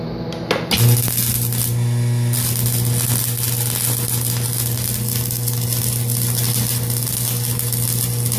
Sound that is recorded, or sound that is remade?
recorded